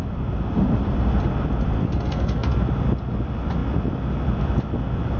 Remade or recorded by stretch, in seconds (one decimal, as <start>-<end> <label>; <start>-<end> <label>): 0.0-1.8 recorded; 1.8-2.6 remade; 2.6-5.2 recorded